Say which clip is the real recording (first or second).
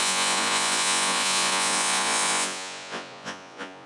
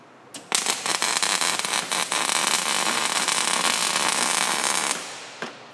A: second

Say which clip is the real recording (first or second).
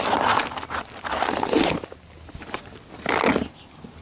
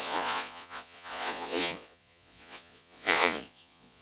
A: first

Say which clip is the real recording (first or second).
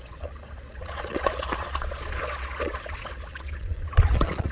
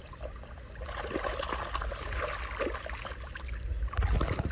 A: second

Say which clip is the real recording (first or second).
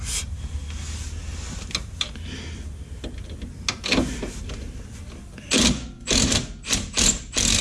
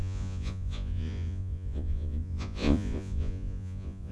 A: first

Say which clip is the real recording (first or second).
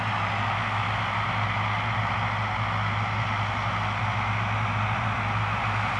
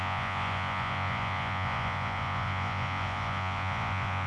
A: first